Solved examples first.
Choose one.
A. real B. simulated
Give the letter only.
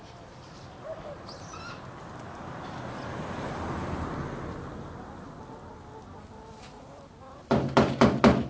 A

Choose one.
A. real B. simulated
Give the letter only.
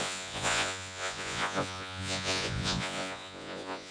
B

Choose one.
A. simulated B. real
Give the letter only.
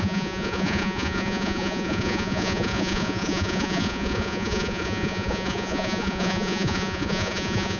A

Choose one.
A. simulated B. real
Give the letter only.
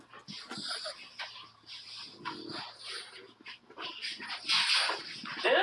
B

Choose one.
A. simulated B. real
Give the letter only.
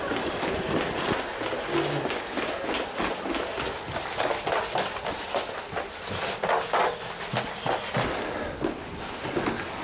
B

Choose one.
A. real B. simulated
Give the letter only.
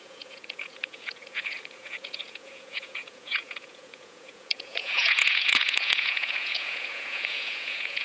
B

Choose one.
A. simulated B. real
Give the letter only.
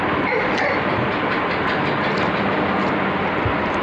B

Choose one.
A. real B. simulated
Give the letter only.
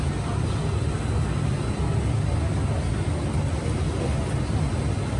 A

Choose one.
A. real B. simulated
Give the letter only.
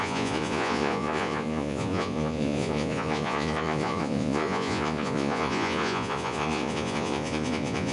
B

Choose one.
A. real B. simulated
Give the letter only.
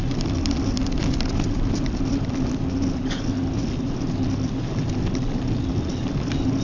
A